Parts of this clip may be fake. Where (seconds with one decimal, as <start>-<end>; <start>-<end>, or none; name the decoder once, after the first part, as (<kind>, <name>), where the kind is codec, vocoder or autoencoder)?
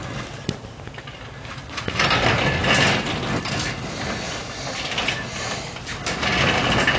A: none